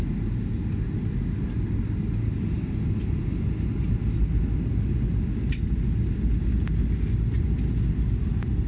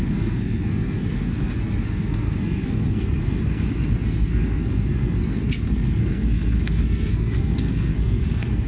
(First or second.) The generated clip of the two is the second